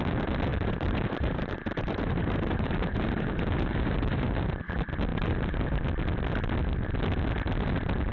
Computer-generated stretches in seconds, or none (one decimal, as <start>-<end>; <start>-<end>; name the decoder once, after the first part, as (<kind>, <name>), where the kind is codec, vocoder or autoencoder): 0.5-4.6 (vocoder, BigVGAN v2); 5.1-5.8

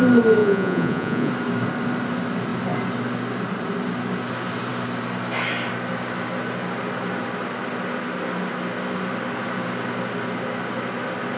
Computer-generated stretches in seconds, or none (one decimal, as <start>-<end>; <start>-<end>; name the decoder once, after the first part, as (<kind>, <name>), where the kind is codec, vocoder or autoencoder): 0.4-1.3 (vocoder, Vocos)

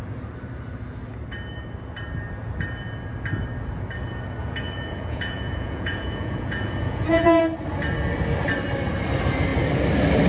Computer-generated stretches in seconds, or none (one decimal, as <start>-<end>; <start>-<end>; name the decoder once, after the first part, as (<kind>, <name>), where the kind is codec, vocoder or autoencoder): 4.4-7.4 (vocoder, Vocos)

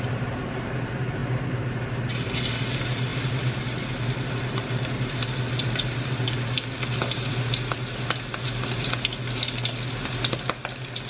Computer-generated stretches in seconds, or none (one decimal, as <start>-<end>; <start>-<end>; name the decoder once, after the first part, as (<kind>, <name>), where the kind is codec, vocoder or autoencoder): none

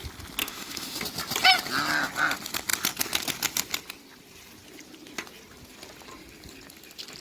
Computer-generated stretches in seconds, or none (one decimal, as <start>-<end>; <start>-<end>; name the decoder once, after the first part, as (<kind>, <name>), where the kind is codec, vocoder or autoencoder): 0.4-1.0 (autoencoder, DAC-VAE)

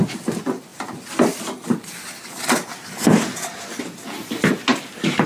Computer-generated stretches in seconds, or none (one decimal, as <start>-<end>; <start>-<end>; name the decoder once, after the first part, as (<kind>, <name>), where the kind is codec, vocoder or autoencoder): none

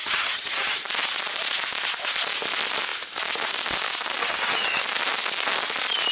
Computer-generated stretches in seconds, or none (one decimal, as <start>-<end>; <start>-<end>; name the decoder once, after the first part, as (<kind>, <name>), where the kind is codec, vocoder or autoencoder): 0.0-0.8 (vocoder, HiFi-GAN); 4.2-4.8